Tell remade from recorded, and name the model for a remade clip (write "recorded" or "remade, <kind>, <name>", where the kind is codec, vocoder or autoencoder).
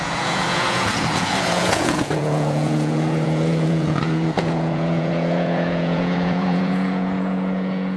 remade, vocoder, Vocos